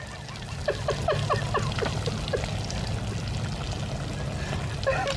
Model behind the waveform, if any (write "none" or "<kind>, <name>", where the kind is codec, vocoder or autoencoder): none